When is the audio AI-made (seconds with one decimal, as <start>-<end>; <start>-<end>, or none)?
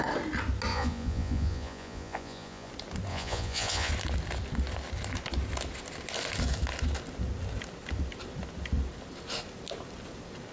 0.7-2.7; 3.1-3.9